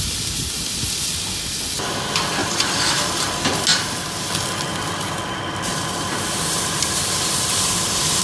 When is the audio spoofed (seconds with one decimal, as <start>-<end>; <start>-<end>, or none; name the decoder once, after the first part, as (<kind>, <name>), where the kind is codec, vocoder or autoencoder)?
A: 2.4-3.3 (vocoder, BigVGAN v2); 3.7-4.3; 5.7-8.2